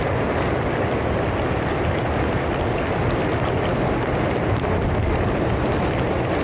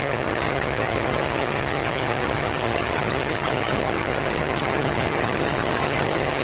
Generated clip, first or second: second